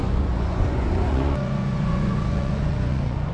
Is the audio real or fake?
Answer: fake